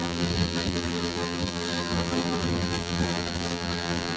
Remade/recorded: remade